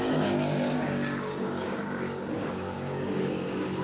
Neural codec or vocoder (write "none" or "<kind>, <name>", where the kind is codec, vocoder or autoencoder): codec, DAC